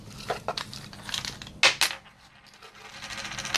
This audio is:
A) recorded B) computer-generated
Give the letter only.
A